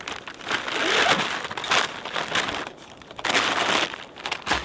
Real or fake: real